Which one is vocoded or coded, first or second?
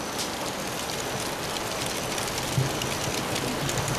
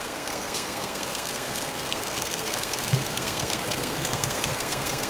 second